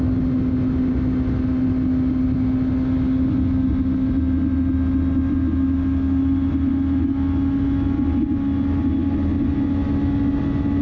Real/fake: real